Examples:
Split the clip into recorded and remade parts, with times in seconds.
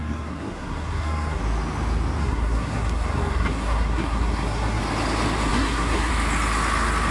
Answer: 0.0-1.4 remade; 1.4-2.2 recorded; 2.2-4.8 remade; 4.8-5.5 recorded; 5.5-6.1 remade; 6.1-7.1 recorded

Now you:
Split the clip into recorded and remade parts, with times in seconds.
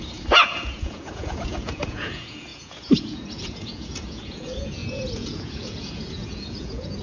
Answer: 0.0-7.0 remade